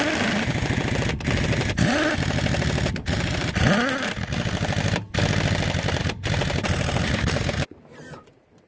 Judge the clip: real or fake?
real